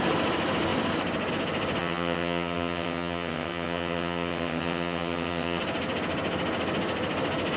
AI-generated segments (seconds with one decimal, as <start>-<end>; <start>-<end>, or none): 1.8-5.6